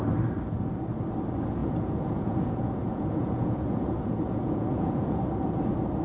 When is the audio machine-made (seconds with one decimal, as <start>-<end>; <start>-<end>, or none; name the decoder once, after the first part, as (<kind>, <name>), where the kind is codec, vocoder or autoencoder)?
1.6-5.2 (vocoder, Vocos)